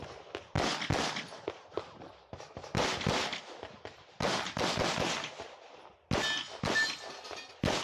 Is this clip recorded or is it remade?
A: recorded